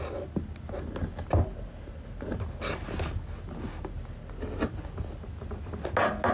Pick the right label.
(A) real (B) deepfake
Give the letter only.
A